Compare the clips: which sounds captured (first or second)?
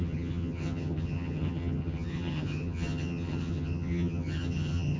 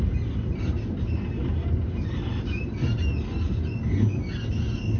second